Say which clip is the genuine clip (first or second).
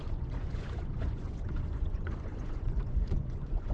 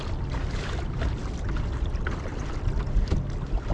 second